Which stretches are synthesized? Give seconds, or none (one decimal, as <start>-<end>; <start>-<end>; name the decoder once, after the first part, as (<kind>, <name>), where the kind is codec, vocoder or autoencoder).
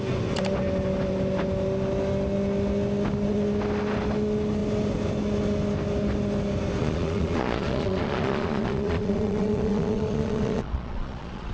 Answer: 6.8-11.5 (vocoder, Vocos)